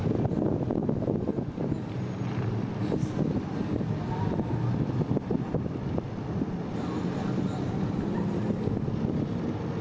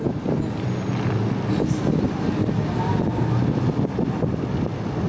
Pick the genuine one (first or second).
second